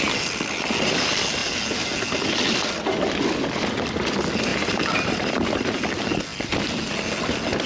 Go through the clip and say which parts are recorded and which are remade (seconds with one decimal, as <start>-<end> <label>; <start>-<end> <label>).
0.0-4.5 recorded; 4.5-5.3 remade; 5.3-7.7 recorded